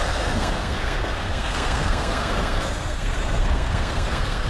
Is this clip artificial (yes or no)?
yes